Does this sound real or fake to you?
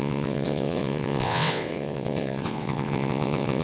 fake